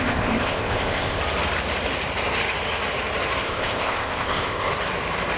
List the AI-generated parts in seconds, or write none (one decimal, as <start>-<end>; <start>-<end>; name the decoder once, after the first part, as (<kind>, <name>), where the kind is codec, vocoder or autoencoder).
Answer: 0.0-1.2 (codec, ZipCodec); 3.4-4.7